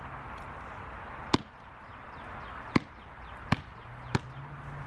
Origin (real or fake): real